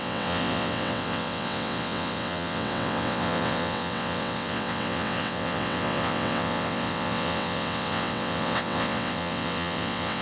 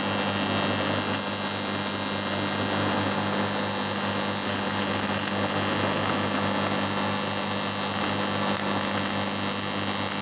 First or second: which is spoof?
first